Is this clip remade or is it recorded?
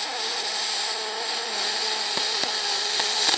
recorded